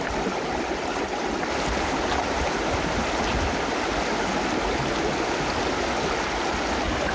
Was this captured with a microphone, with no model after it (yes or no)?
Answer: yes